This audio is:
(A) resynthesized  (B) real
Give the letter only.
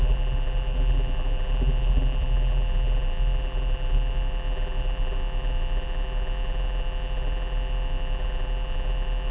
A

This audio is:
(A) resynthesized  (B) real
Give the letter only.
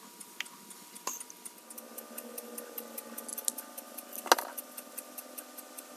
B